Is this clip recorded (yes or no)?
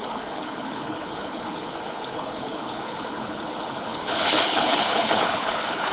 no